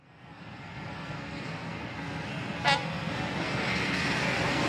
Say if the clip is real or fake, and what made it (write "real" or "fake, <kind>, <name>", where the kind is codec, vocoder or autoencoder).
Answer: fake, codec, SNAC